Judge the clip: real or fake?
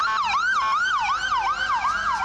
real